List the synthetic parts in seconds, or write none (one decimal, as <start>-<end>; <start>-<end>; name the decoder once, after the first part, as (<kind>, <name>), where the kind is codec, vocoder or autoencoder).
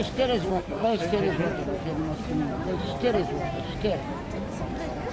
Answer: 0.5-1.0 (codec, SNAC)